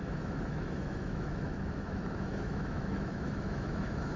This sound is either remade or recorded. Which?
remade